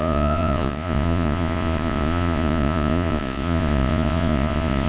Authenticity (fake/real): fake